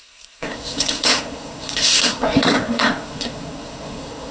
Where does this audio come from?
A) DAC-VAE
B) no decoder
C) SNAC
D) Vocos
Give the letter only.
C